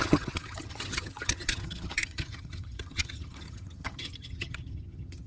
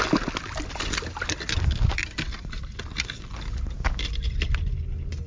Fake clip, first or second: first